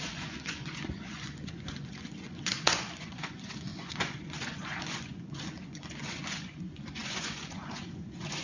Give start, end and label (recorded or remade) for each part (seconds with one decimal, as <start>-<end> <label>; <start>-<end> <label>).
0.0-8.4 remade